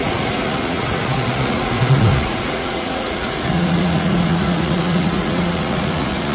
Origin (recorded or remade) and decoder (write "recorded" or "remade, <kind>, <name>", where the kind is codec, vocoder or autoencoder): remade, vocoder, Vocos